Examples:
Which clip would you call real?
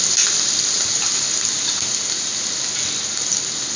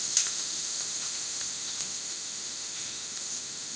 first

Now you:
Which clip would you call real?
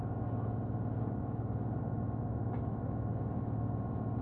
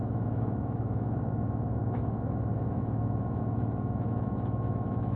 first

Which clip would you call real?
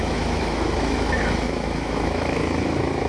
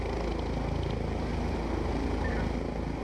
second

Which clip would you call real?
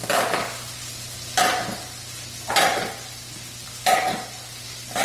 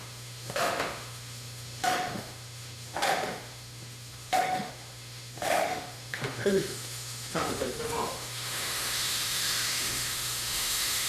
first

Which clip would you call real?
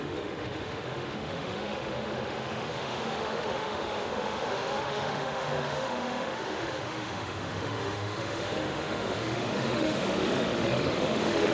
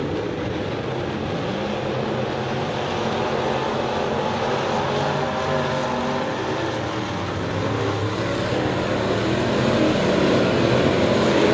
second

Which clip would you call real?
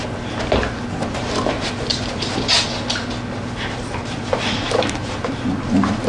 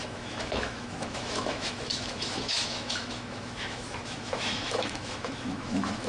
first